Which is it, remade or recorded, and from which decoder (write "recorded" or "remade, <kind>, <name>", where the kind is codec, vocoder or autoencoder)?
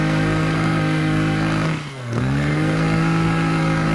remade, codec, SNAC